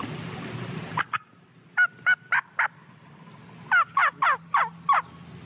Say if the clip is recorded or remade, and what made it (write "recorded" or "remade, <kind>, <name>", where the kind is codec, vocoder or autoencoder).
recorded